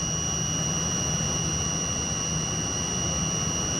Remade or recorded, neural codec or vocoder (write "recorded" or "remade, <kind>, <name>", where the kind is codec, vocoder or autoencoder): recorded